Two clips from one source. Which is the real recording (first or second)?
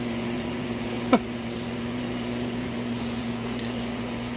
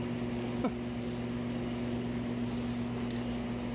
second